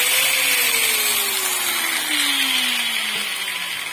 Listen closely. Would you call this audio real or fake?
real